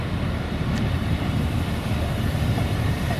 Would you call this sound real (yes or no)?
no